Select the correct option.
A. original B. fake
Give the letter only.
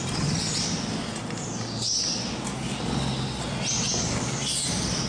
A